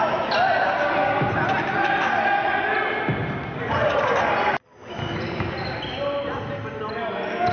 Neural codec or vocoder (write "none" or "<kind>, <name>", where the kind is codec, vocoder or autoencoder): none